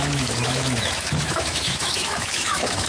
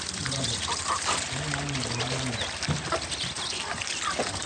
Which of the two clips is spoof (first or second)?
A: first